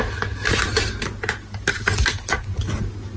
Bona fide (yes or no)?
yes